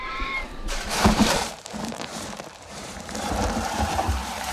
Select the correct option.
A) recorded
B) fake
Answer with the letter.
B